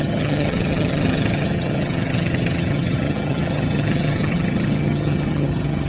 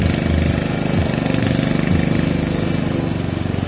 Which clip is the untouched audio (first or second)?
second